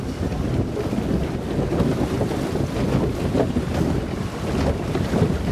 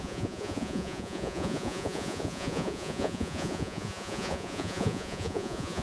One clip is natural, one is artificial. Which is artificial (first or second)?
second